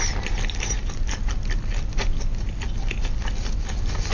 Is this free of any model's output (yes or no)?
yes